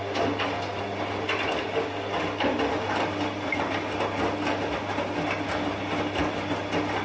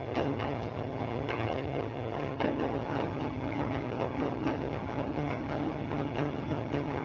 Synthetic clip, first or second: second